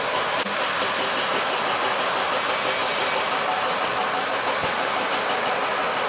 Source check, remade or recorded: recorded